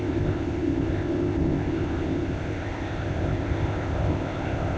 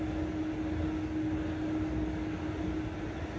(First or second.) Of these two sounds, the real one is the second